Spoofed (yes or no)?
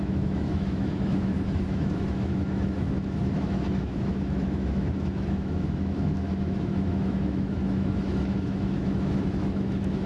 yes